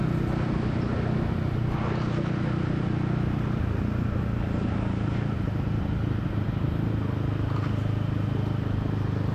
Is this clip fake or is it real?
real